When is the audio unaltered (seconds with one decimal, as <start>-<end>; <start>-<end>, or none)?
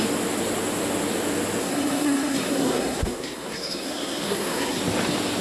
0.0-1.6; 4.8-5.4